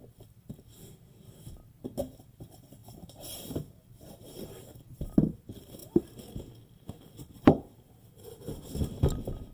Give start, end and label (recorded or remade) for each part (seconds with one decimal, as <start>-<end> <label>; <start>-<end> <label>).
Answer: 0.0-2.8 recorded; 2.8-4.5 remade; 4.5-9.5 recorded